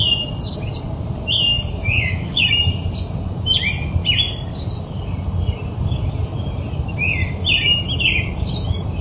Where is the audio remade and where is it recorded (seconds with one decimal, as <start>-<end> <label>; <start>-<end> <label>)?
0.0-1.5 recorded; 1.5-2.5 remade; 2.5-9.0 recorded